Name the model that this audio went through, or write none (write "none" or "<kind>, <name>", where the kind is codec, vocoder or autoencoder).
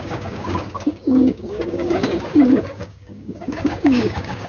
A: codec, DAC